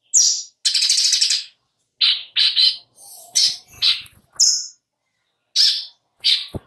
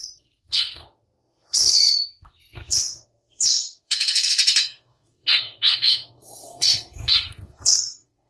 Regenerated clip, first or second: second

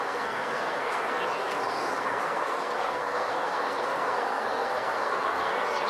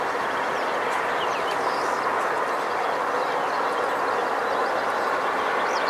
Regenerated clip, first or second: first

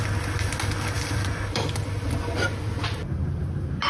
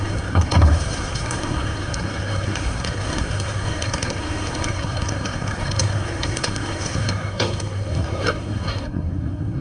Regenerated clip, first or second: second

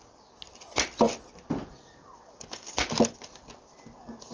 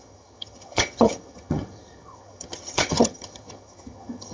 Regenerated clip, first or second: second